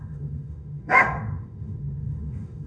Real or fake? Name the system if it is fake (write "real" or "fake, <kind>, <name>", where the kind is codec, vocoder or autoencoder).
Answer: fake, autoencoder, DAC-VAE